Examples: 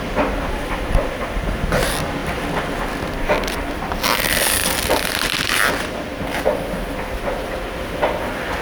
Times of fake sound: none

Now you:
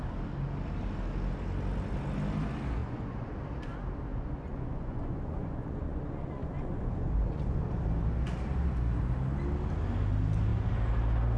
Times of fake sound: 2.8-3.4 (vocoder, Vocos); 4.1-7.8

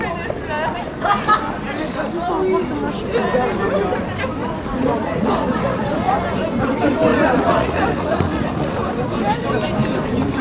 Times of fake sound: 4.4-6.2 (vocoder, Vocos); 7.1-8.7

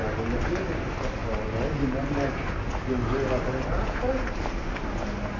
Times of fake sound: none

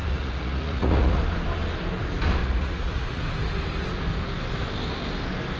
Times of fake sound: 0.0-1.2 (vocoder, Vocos); 2.4-3.2

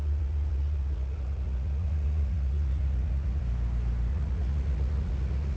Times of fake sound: 0.0-3.4 (vocoder, Vocos); 4.1-5.6